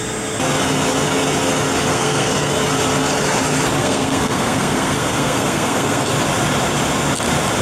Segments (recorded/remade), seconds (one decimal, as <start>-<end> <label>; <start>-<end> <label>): 0.0-1.9 recorded; 1.9-2.5 remade; 2.5-3.8 recorded; 3.8-6.1 remade; 6.1-7.6 recorded

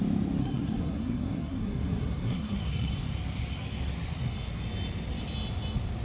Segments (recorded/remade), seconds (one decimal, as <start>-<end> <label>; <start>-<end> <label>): 0.0-0.4 recorded; 0.4-2.9 remade; 2.9-6.0 recorded

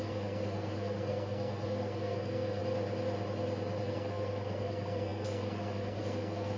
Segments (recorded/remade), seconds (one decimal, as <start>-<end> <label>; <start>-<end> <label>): 0.0-2.6 remade; 2.6-3.8 recorded; 3.8-6.6 remade

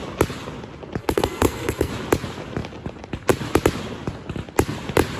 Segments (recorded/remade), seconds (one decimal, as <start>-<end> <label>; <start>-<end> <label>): 0.0-1.0 recorded; 1.0-1.9 remade; 1.9-5.2 recorded

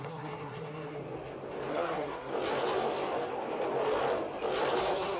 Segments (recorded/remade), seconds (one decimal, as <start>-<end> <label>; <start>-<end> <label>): 0.0-1.0 remade; 1.0-1.7 recorded; 1.7-2.3 remade; 2.3-4.8 recorded; 4.8-5.2 remade

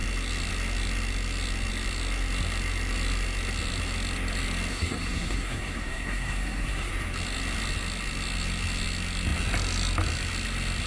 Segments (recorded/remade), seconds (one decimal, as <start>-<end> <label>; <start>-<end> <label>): 0.0-4.7 recorded; 4.7-6.9 remade; 6.9-10.9 recorded

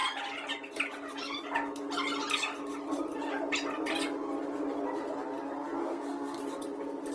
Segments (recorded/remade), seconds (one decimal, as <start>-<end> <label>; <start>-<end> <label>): 0.0-5.8 recorded; 5.8-6.4 remade; 6.4-7.1 recorded

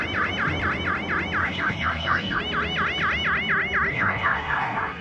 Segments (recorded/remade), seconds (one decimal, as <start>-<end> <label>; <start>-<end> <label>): 0.0-1.4 recorded; 1.4-2.4 remade; 2.4-3.9 recorded; 3.9-5.0 remade